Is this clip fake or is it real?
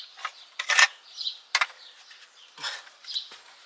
real